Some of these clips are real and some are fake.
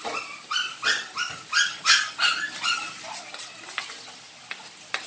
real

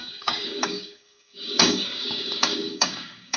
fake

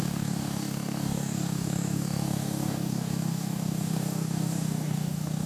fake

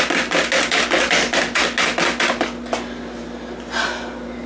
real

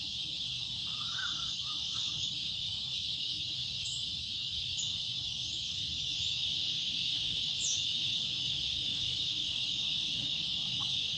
fake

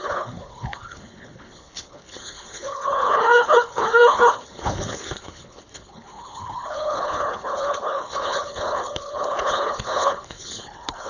fake